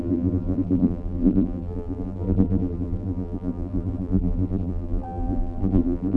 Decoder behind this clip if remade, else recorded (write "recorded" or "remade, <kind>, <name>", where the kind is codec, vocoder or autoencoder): remade, vocoder, BigVGAN v2